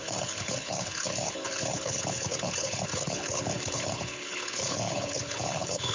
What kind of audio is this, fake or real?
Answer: fake